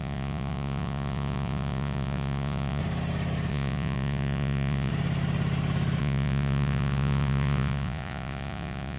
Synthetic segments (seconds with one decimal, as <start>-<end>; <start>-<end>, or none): 0.0-2.8; 3.5-4.9; 6.0-9.0